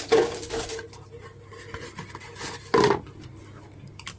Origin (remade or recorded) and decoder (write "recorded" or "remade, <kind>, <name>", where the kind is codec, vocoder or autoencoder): recorded